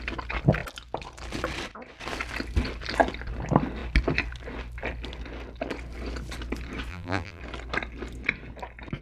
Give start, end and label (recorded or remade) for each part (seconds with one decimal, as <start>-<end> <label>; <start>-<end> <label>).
0.0-6.9 recorded; 6.9-7.4 remade; 7.4-9.0 recorded

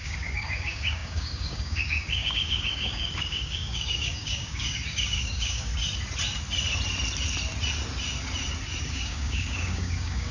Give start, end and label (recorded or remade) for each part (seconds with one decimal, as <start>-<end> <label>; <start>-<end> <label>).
0.0-5.7 remade; 5.7-8.8 recorded; 8.8-10.3 remade

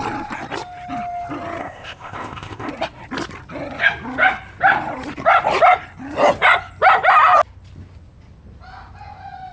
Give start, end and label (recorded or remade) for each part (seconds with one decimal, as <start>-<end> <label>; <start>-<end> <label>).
0.0-1.6 recorded; 1.6-2.7 remade; 2.7-9.5 recorded

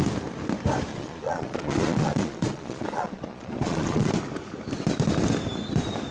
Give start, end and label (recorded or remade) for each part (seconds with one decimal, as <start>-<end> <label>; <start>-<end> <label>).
0.0-0.9 recorded; 0.9-4.1 remade; 4.1-6.1 recorded